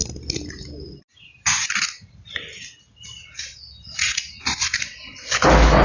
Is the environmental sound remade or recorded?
recorded